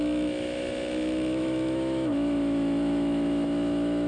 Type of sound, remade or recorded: remade